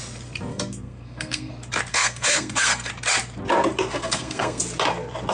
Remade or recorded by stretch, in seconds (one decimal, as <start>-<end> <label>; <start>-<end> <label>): 0.0-0.5 recorded; 0.5-1.5 remade; 1.5-1.9 recorded; 1.9-2.9 remade; 2.9-3.9 recorded; 3.9-4.6 remade; 4.6-5.3 recorded